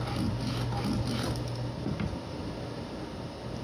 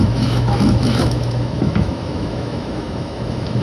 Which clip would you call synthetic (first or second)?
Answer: second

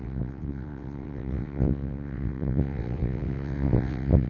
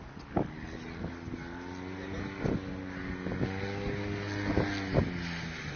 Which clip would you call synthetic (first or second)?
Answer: first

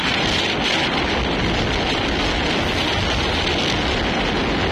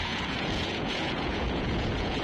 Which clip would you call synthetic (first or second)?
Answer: second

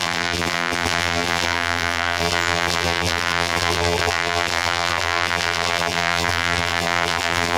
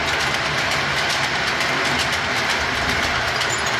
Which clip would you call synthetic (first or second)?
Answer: first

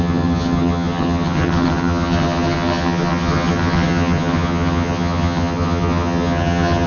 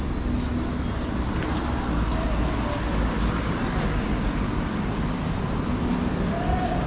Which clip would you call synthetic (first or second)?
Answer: first